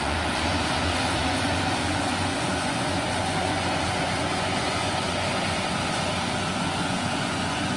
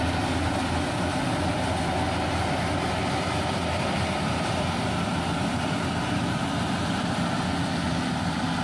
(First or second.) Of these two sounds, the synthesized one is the first